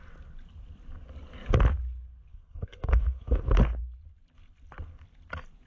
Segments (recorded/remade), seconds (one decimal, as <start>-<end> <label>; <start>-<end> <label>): 0.0-2.3 recorded; 2.3-3.4 remade; 3.4-5.7 recorded